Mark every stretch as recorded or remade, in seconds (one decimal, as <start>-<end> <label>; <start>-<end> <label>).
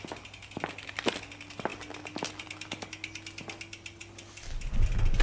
0.0-5.2 recorded